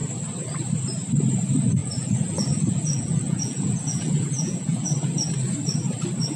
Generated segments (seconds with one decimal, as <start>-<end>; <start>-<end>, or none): 1.8-4.9